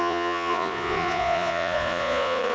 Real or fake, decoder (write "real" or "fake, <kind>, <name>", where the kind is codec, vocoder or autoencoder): fake, vocoder, Vocos